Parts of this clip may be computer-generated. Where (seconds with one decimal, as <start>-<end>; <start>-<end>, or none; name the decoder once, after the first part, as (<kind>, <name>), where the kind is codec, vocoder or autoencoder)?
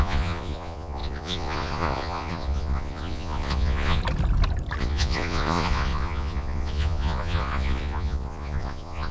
0.0-4.0 (vocoder, Vocos); 4.8-9.1